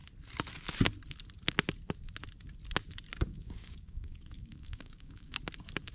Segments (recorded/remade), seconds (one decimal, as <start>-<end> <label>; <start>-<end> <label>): 0.0-3.3 recorded; 3.3-5.3 remade; 5.3-5.9 recorded